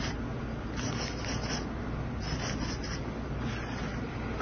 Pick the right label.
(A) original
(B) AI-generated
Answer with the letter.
A